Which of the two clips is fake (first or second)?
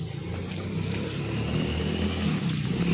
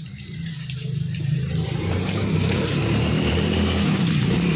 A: second